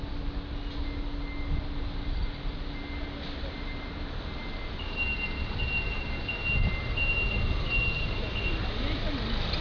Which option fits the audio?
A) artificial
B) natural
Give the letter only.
B